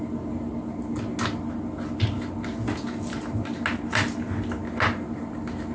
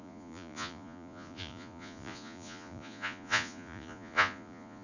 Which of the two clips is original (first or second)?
first